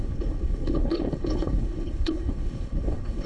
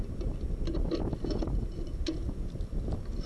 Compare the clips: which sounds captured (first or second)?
second